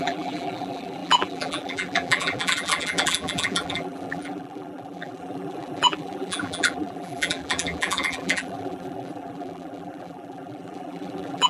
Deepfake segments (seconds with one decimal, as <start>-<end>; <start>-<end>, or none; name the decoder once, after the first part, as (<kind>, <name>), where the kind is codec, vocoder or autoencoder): 0.0-11.5 (vocoder, BigVGAN v2)